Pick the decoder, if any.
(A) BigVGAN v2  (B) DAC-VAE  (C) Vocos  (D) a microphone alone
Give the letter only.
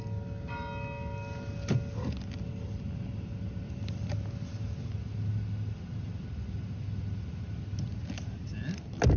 D